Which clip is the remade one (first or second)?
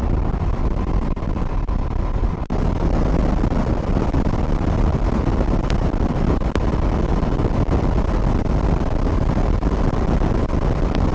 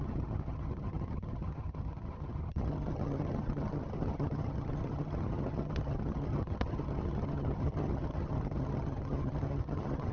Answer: second